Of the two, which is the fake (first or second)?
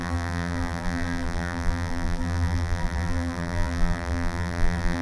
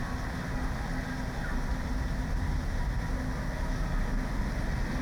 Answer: first